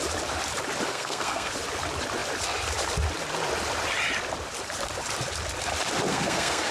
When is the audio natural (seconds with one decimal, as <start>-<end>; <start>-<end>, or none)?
0.0-0.9; 1.5-6.1